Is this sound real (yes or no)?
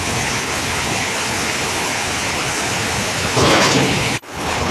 no